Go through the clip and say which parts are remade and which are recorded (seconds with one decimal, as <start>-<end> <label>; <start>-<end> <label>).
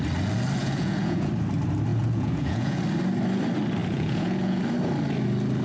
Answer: 0.0-0.6 recorded; 0.6-1.3 remade; 1.3-1.9 recorded; 1.9-2.8 remade; 2.8-3.8 recorded; 3.8-4.6 remade; 4.6-5.6 recorded